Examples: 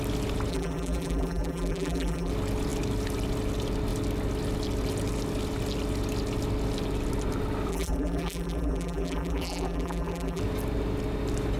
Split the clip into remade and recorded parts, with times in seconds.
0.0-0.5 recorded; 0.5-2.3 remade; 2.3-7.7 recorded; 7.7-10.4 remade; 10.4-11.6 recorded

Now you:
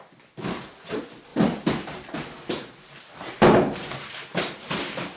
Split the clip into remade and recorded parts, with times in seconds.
0.0-1.3 recorded; 1.3-3.0 remade; 3.0-5.2 recorded

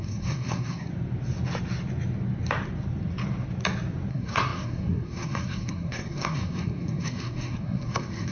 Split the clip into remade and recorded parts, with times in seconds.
0.0-0.9 remade; 0.9-4.1 recorded; 4.1-8.3 remade

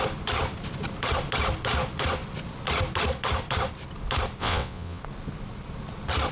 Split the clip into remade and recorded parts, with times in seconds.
0.0-4.4 recorded; 4.4-5.0 remade; 5.0-6.3 recorded

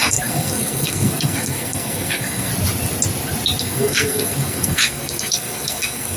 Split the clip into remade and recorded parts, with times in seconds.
0.0-2.5 remade; 2.5-3.6 recorded; 3.6-6.2 remade